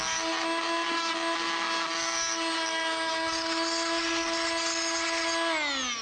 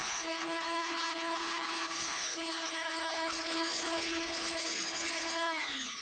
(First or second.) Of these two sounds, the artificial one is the second